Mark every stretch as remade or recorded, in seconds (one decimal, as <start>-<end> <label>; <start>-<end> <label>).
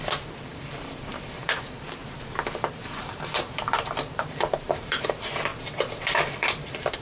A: 0.0-2.0 remade; 2.0-2.7 recorded; 2.7-5.5 remade; 5.5-6.3 recorded; 6.3-7.0 remade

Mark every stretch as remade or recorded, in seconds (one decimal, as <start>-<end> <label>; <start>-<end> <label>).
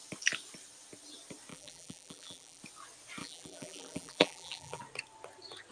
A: 0.0-1.5 recorded; 1.5-2.6 remade; 2.6-3.2 recorded; 3.2-4.8 remade; 4.8-5.7 recorded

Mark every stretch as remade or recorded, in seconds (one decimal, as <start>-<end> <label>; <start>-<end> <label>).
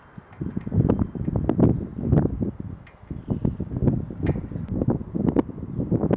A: 0.0-6.2 recorded